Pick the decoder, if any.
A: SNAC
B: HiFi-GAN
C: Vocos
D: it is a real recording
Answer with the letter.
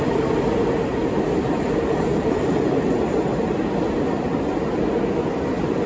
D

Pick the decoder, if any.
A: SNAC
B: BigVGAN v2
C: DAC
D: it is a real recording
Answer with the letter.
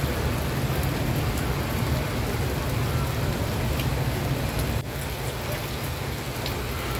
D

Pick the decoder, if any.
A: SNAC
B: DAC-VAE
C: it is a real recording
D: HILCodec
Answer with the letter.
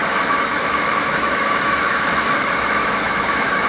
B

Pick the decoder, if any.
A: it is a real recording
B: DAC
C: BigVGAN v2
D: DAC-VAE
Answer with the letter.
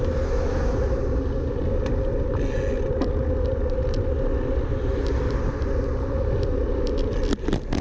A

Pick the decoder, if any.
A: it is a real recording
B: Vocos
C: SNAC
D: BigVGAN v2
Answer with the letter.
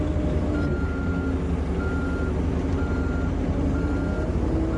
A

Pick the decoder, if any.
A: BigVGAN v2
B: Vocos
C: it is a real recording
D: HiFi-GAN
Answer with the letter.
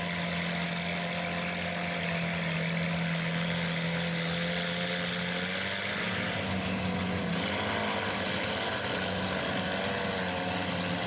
C